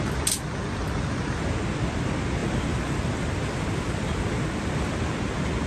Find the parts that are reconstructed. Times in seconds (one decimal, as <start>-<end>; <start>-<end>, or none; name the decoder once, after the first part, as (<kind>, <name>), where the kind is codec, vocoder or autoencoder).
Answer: 2.4-5.0 (vocoder, BigVGAN v2)